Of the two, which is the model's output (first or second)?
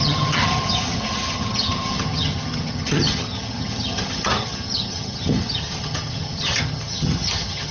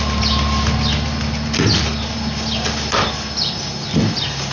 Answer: first